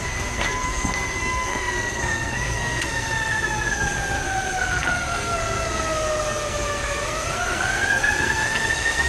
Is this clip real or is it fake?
fake